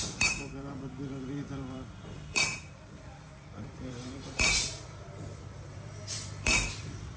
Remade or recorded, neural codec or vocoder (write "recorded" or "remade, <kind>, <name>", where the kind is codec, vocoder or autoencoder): remade, vocoder, BigVGAN v2